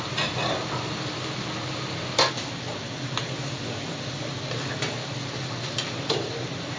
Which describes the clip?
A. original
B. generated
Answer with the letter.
A